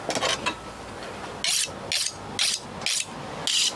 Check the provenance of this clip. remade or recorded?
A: recorded